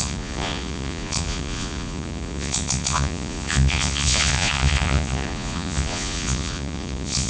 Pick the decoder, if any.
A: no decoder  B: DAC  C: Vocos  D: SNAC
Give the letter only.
C